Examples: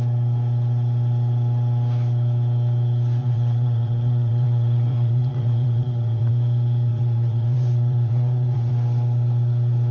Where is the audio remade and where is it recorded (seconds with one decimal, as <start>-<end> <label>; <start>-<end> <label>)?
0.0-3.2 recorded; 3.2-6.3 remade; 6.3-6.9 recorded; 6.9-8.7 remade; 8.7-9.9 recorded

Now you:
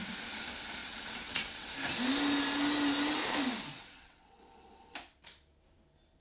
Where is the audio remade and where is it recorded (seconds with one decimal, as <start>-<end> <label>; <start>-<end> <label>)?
0.0-0.8 recorded; 0.8-1.7 remade; 1.7-3.7 recorded; 3.7-4.4 remade; 4.4-6.2 recorded

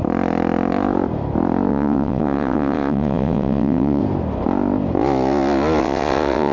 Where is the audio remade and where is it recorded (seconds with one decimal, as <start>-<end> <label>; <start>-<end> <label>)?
0.0-1.7 recorded; 1.7-4.0 remade; 4.0-5.8 recorded; 5.8-6.5 remade

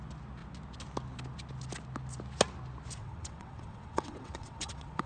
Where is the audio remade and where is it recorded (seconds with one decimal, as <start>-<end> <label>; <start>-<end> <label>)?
0.0-3.0 recorded; 3.0-5.1 remade

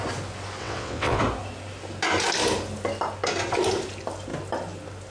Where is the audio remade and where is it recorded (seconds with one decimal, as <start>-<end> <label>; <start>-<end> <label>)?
0.0-0.6 recorded; 0.6-1.2 remade; 1.2-5.1 recorded

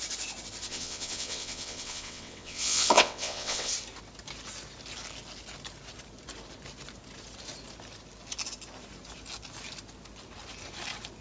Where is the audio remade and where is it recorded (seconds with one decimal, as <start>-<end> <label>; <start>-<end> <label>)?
0.0-0.7 recorded; 0.7-3.7 remade; 3.7-11.2 recorded